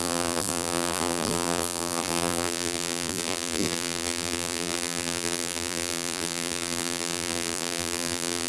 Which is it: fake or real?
fake